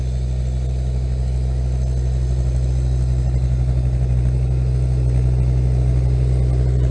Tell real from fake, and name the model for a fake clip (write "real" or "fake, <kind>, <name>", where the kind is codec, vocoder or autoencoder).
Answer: real